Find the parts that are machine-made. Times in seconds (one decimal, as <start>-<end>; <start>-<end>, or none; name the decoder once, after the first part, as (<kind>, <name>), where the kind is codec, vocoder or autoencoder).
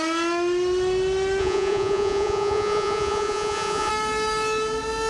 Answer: 1.4-3.9 (vocoder, Vocos)